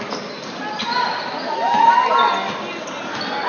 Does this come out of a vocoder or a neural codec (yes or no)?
no